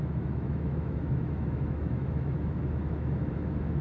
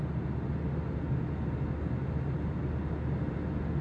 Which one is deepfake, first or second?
first